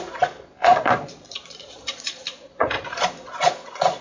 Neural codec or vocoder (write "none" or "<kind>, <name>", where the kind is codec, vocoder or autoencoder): vocoder, Vocos